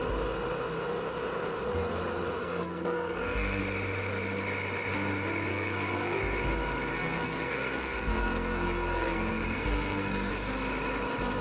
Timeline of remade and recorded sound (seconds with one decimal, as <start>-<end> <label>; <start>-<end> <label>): 0.0-2.4 recorded; 2.4-3.6 remade; 3.6-5.5 recorded; 5.5-6.2 remade; 6.2-6.9 recorded; 6.9-10.3 remade; 10.3-11.4 recorded